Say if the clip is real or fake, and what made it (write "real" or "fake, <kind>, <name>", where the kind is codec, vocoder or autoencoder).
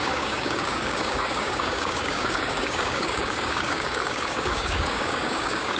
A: fake, codec, DAC